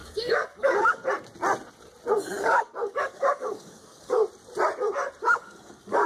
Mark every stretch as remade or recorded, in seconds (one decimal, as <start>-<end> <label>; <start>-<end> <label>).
0.0-1.0 remade; 1.0-2.2 recorded; 2.2-4.2 remade; 4.2-5.2 recorded; 5.2-6.1 remade